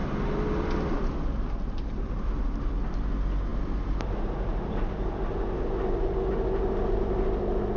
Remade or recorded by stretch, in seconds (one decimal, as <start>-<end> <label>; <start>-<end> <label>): 0.0-2.7 remade; 2.7-7.8 recorded